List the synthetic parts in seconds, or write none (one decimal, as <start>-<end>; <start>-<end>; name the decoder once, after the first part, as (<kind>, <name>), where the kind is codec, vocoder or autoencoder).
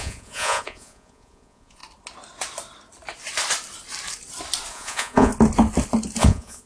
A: 0.0-1.8 (vocoder, Vocos); 4.7-5.3; 6.2-6.7